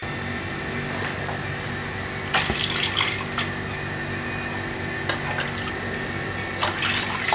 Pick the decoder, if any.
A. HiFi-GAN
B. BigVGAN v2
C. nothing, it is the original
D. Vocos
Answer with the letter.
C